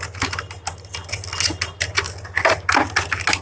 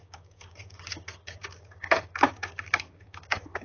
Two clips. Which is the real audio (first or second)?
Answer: first